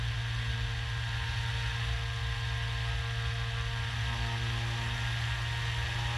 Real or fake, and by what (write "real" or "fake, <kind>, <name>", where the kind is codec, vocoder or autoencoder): real